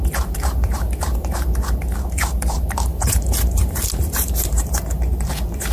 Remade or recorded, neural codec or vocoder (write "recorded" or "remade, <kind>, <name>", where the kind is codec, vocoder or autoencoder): remade, vocoder, BigVGAN v2